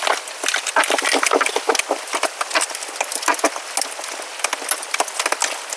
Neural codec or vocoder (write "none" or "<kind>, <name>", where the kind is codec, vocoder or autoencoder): none